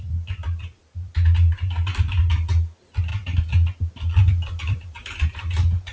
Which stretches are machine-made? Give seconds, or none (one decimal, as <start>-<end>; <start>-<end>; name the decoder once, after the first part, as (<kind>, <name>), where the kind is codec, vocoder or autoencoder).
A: 0.4-2.3 (vocoder, BigVGAN v2); 4.2-5.9